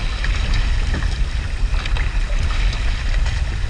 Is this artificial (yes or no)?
no